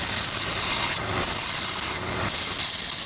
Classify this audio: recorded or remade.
recorded